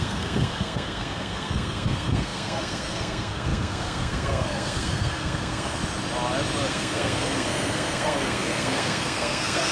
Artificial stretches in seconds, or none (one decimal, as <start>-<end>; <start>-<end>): 0.0-5.8; 6.7-9.7